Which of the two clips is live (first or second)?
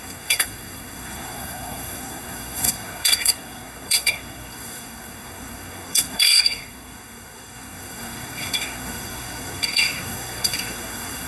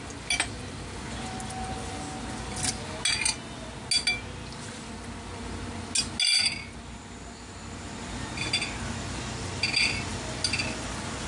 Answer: second